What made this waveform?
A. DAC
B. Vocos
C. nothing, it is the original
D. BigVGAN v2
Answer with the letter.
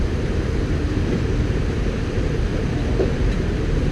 D